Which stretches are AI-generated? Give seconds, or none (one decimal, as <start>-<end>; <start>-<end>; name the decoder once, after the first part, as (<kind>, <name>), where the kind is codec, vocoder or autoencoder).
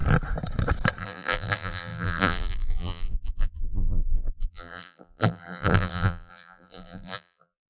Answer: 1.0-7.7 (vocoder, BigVGAN v2)